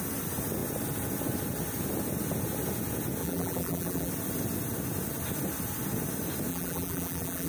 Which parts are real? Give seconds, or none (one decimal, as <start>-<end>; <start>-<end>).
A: 0.0-3.2; 4.1-6.5